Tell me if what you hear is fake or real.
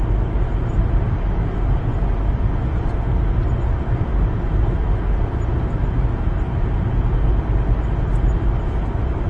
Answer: real